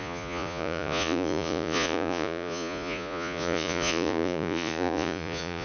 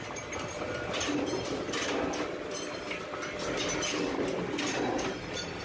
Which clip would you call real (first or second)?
second